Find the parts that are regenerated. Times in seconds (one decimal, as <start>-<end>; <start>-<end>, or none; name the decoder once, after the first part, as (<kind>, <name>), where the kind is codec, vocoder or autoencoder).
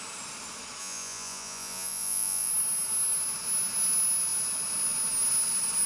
0.8-2.5 (vocoder, Vocos)